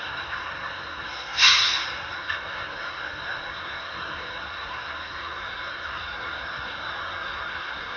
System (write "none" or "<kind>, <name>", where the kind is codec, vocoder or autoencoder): codec, SNAC